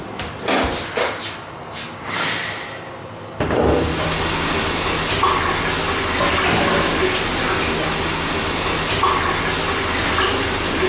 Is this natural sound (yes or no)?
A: yes